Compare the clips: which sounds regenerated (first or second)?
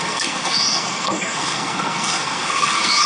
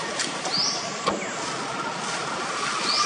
first